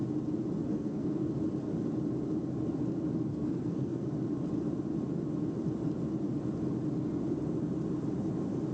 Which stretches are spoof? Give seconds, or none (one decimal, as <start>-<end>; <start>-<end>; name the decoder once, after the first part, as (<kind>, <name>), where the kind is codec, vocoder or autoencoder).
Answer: 0.7-1.3 (codec, SNAC); 3.3-4.1